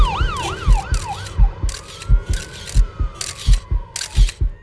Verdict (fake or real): real